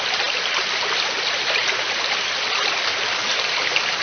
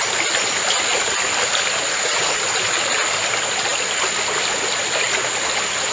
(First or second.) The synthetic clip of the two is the first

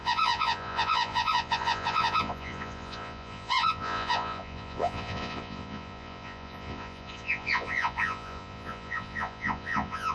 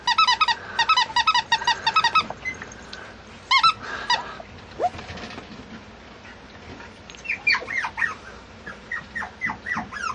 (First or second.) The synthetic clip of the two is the first